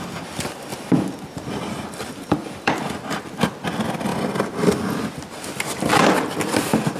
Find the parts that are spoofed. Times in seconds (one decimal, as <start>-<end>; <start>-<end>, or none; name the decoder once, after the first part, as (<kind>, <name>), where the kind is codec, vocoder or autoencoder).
0.7-2.9 (vocoder, BigVGAN v2)